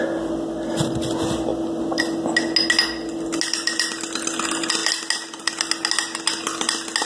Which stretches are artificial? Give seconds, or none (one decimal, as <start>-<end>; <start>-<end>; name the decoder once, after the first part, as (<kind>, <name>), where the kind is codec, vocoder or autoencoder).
none